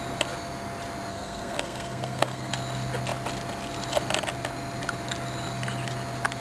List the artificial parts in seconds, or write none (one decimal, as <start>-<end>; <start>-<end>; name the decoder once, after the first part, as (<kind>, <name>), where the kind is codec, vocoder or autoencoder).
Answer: 1.1-2.5 (codec, SNAC)